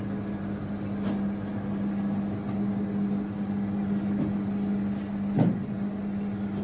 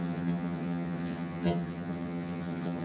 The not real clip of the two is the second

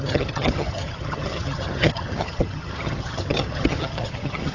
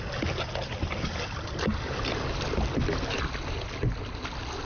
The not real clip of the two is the first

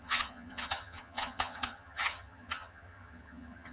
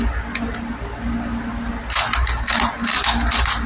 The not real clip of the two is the first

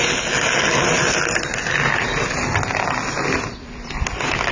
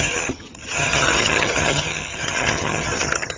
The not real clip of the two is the second